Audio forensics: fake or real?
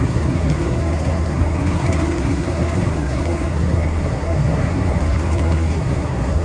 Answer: fake